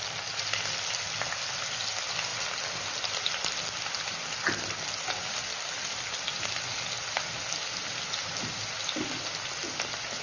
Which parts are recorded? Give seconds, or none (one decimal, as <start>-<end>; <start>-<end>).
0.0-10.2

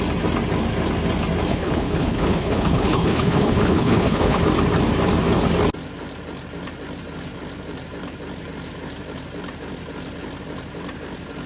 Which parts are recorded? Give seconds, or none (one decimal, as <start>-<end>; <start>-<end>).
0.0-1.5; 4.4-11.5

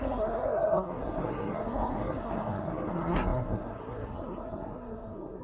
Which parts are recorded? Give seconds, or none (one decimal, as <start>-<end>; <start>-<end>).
none